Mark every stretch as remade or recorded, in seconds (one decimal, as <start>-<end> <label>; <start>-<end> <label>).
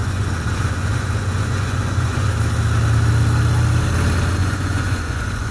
0.0-2.3 remade; 2.3-4.4 recorded; 4.4-5.5 remade